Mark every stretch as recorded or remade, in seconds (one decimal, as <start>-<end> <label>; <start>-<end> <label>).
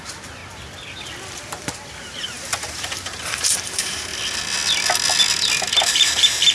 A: 0.0-0.4 remade; 0.4-1.5 recorded; 1.5-4.1 remade; 4.1-5.7 recorded; 5.7-6.5 remade